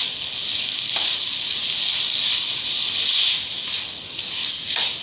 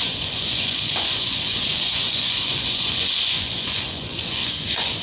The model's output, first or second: second